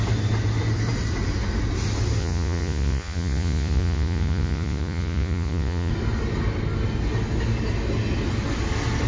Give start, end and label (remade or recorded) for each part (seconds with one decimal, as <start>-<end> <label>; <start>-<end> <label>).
0.0-2.2 recorded; 2.2-5.9 remade; 5.9-9.1 recorded